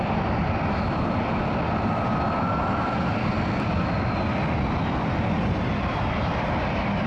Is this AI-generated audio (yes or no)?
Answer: no